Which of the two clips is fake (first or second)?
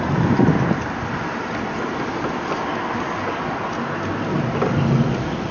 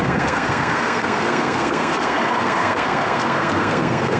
second